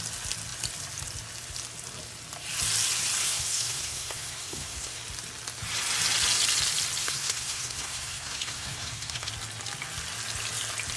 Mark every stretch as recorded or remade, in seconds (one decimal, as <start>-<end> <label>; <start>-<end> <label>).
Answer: 0.0-3.2 recorded; 3.2-5.0 remade; 5.0-7.0 recorded; 7.0-9.3 remade; 9.3-11.0 recorded